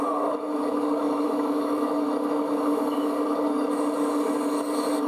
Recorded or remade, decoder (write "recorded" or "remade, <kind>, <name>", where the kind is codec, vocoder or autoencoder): remade, codec, DAC